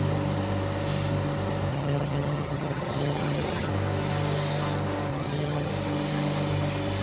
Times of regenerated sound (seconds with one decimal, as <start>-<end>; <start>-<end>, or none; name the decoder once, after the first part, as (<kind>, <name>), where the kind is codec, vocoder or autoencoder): 1.7-3.7 (vocoder, HiFi-GAN); 5.1-5.7